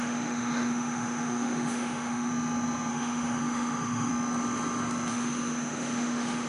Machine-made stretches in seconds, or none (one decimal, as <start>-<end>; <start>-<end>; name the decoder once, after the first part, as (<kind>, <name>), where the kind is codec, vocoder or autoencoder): 0.0-2.3 (autoencoder, DAC-VAE); 2.9-4.1; 5.1-6.5